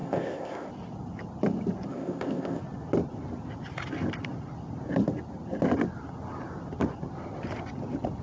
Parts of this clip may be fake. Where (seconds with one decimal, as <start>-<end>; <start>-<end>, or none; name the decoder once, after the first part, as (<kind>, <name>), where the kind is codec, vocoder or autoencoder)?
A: 0.0-0.7 (codec, ZipCodec); 1.9-2.6